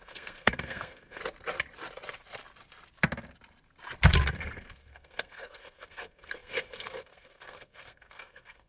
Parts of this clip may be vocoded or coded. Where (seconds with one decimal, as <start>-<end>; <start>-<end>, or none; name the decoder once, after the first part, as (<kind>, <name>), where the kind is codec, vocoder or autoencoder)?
0.0-1.2 (codec, SNAC); 4.3-8.7